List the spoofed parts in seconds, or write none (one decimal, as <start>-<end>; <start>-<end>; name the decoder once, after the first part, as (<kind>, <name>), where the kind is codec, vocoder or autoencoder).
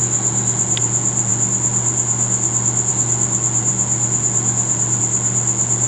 none